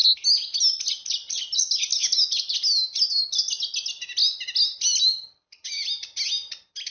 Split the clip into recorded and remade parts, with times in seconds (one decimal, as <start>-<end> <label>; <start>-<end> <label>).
0.0-6.9 recorded